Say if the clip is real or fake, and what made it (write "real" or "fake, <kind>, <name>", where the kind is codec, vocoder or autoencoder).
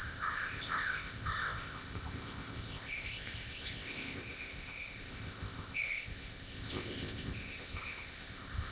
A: fake, codec, ZipCodec